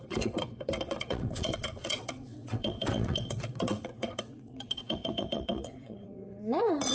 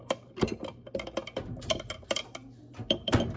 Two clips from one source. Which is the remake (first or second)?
first